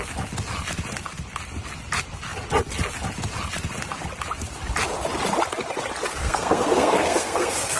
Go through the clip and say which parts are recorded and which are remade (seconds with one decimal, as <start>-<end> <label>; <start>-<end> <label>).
0.0-6.2 recorded; 6.2-7.8 remade